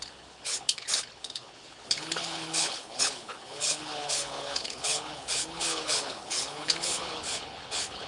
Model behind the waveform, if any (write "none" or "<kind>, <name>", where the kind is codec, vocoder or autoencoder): codec, HILCodec